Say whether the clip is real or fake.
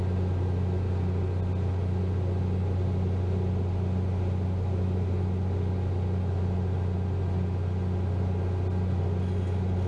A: real